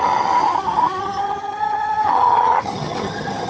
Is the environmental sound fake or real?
fake